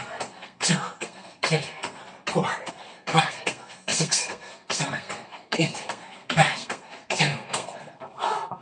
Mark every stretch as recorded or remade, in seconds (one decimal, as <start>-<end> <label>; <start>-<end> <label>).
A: 0.0-2.0 remade; 2.0-2.7 recorded; 2.7-8.6 remade